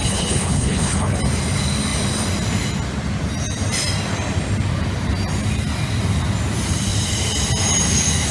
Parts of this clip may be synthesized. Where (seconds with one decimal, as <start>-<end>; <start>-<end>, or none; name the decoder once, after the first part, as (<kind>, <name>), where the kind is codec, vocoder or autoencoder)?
0.0-1.2 (codec, HILCodec)